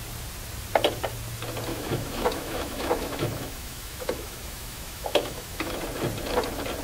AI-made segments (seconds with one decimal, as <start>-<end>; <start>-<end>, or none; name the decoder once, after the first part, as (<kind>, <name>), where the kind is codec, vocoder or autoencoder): 1.7-5.8 (autoencoder, DAC-VAE)